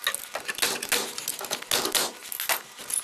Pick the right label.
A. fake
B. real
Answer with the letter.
B